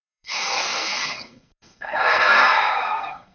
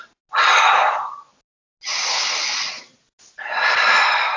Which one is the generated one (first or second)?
first